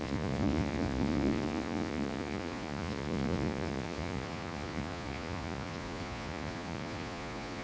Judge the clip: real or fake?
fake